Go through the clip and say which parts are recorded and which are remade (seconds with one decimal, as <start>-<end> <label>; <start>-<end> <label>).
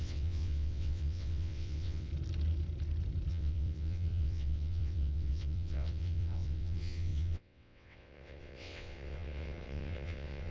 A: 0.0-2.1 remade; 2.1-3.3 recorded; 3.3-10.5 remade